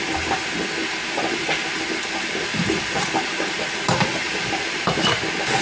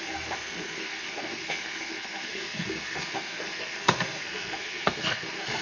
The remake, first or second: second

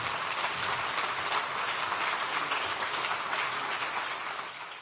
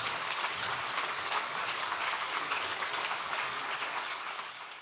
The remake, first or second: second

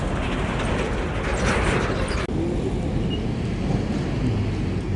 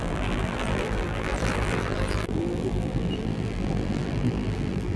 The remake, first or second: second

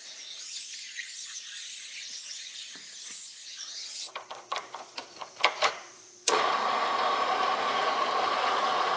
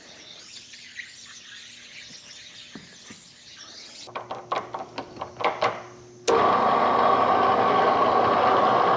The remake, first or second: first